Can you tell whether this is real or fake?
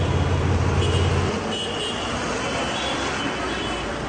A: real